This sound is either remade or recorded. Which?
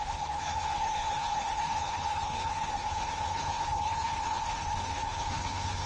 remade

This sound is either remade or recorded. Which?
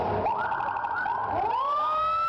recorded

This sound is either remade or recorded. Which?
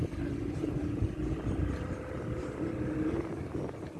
recorded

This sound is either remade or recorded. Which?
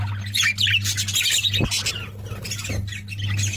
recorded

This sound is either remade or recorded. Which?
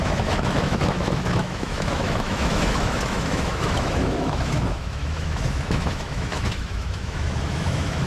remade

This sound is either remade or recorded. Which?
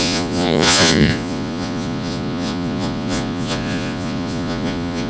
remade